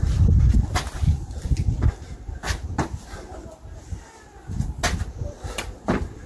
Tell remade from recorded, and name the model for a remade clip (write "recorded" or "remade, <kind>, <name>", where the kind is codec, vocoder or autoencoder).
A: recorded